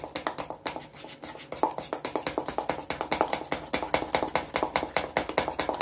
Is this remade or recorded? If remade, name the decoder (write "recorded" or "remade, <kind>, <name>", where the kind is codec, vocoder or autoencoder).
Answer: recorded